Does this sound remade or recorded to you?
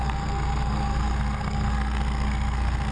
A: remade